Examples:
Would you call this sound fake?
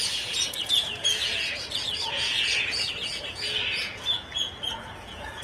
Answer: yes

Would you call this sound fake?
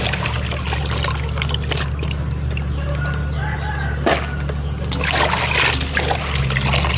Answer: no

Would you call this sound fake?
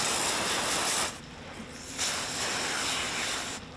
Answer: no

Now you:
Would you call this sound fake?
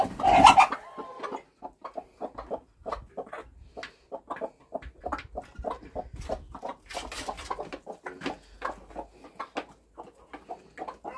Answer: no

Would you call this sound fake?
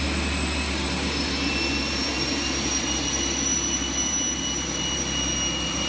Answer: no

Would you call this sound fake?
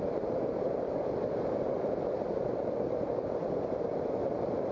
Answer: no